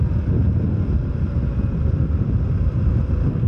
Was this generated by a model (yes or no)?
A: no